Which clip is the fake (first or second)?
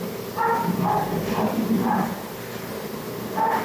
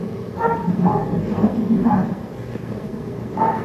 second